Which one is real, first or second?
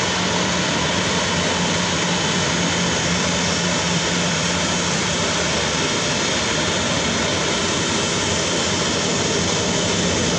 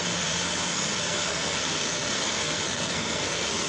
first